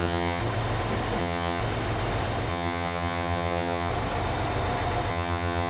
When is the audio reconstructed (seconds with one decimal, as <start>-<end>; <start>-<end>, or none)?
0.0-0.4; 1.2-1.6; 2.5-3.9; 5.1-5.7